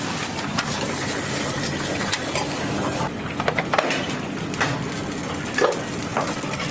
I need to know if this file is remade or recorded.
recorded